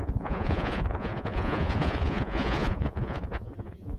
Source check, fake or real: fake